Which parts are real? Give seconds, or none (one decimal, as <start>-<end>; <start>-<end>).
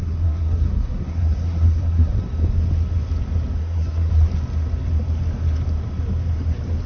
2.2-3.6; 4.1-6.9